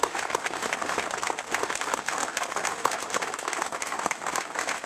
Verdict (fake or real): fake